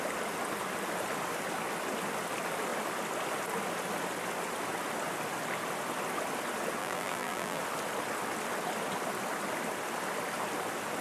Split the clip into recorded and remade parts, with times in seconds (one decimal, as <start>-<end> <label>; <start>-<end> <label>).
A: 0.0-6.8 recorded; 6.8-7.6 remade; 7.6-11.0 recorded